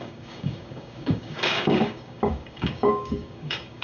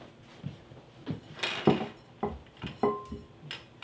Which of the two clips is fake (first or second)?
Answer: first